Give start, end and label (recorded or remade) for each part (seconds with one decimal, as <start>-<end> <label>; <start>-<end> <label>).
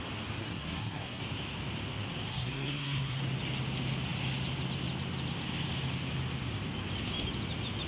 0.0-0.4 recorded; 0.4-1.2 remade; 1.2-2.3 recorded; 2.3-3.2 remade; 3.2-7.9 recorded